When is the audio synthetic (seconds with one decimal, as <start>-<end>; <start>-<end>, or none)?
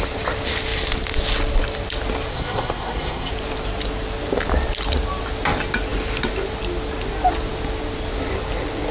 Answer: 2.3-3.3